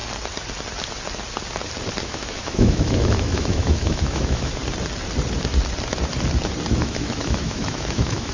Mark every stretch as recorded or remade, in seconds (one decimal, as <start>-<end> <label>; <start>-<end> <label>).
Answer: 0.0-2.0 recorded; 2.0-4.6 remade; 4.6-6.7 recorded; 6.7-8.3 remade